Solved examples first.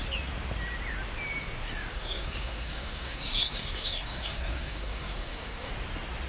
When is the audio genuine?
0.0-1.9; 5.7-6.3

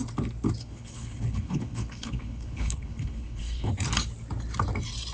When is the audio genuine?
0.0-0.6; 3.7-5.1

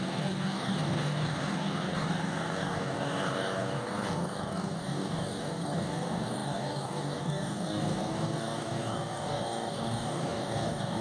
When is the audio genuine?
none